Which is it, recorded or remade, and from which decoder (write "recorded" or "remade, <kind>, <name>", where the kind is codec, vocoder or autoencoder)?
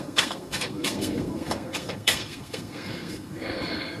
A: remade, codec, SNAC